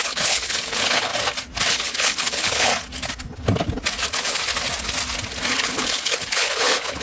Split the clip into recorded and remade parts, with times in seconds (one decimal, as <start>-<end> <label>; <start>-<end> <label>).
0.0-1.1 remade; 1.1-1.7 recorded; 1.7-2.7 remade; 2.7-4.1 recorded; 4.1-4.5 remade; 4.5-5.5 recorded; 5.5-7.0 remade

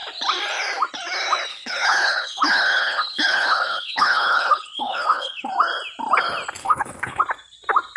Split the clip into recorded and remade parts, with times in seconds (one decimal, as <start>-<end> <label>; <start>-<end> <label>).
0.0-1.5 recorded; 1.5-5.5 remade; 5.5-6.6 recorded; 6.6-7.2 remade; 7.2-8.0 recorded

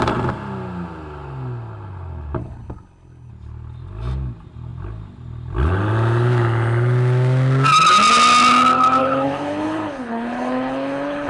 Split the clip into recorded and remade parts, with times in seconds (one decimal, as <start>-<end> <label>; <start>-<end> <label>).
0.0-2.4 recorded; 2.4-3.3 remade; 3.3-9.0 recorded; 9.0-11.3 remade